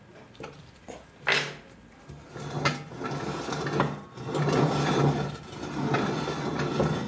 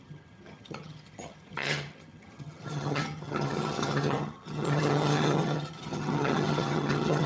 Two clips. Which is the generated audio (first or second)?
second